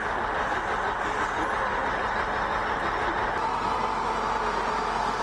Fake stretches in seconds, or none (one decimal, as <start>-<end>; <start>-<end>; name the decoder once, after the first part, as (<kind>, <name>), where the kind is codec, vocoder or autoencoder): none